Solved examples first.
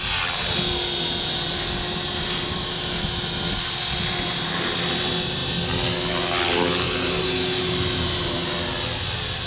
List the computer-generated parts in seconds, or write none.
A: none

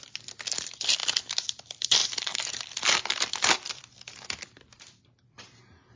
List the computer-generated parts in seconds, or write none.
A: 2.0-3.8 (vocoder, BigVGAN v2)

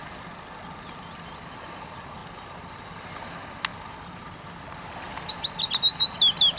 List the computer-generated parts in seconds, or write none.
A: 2.2-2.8 (vocoder, BigVGAN v2); 3.7-5.3